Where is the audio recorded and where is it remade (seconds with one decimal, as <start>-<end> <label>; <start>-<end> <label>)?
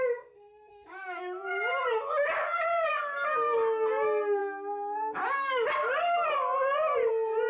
0.0-0.7 recorded; 0.7-1.5 remade; 1.5-7.5 recorded